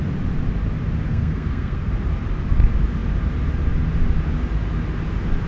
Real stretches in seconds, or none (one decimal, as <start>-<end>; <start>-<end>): 0.0-1.1; 1.9-5.5